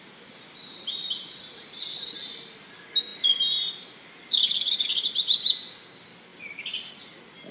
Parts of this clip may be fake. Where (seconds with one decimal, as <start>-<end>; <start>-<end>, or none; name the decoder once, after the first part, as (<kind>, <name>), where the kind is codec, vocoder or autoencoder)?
none